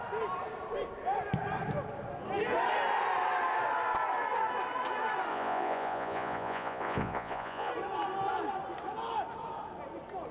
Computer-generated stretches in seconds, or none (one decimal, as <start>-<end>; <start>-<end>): 5.3-7.7